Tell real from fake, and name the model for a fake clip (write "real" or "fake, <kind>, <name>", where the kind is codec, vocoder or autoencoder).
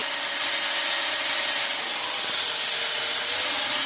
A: real